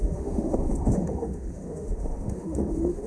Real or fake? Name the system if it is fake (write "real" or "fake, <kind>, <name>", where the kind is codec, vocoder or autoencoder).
fake, autoencoder, DAC-VAE